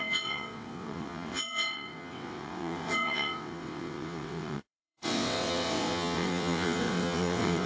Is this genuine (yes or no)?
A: no